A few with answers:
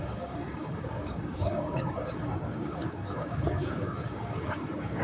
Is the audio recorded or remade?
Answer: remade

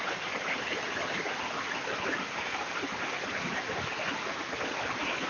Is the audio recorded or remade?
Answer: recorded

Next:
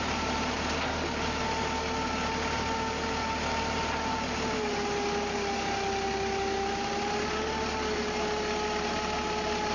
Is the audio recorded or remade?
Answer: recorded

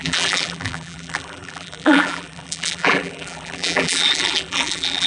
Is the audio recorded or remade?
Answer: remade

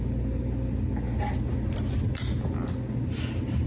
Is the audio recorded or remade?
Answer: recorded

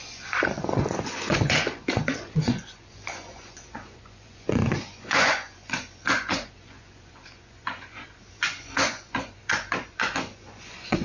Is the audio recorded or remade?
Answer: remade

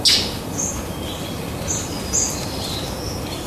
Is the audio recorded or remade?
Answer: recorded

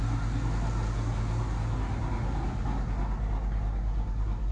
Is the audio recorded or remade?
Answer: recorded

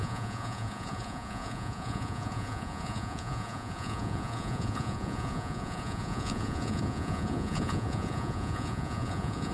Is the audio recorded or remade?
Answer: remade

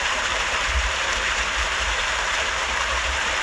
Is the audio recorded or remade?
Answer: remade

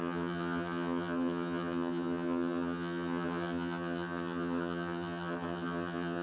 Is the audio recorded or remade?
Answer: remade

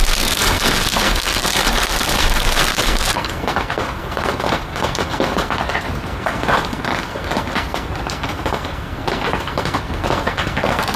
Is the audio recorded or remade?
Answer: remade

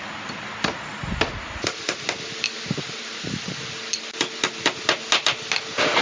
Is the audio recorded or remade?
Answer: recorded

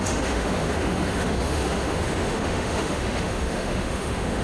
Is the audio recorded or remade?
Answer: remade